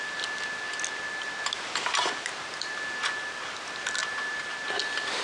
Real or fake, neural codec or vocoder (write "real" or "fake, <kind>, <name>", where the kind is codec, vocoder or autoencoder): real